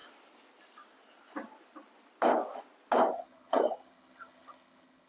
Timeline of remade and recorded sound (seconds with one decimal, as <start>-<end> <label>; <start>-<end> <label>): 0.0-3.1 recorded; 3.1-5.1 remade